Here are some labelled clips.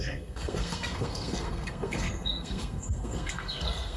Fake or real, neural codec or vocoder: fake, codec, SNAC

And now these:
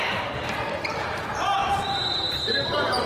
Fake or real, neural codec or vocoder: fake, vocoder, BigVGAN v2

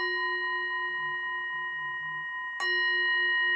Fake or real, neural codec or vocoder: real